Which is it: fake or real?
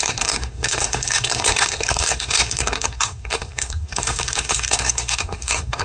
fake